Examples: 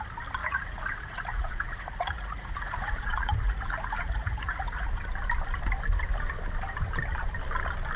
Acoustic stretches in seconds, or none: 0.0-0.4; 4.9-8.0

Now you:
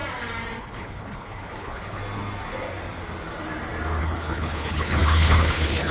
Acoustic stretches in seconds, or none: 0.0-0.6; 2.0-4.0

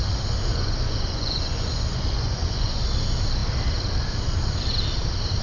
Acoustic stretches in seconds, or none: 0.0-0.5; 2.8-5.4

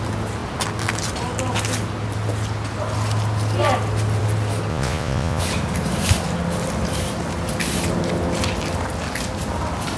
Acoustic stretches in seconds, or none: 0.0-4.7; 5.4-10.0

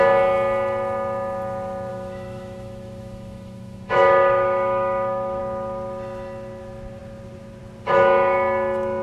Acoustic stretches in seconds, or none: 0.0-1.9; 5.4-9.0